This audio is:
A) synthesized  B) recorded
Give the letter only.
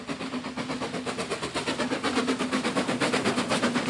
B